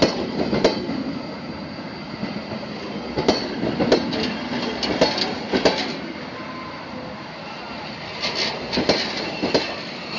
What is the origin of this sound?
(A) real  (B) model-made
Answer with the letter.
A